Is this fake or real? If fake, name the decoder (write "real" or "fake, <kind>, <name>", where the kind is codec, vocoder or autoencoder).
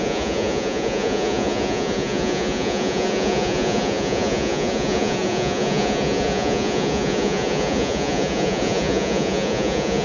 fake, vocoder, Vocos